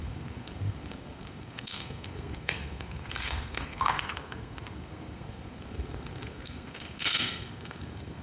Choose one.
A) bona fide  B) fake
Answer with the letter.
B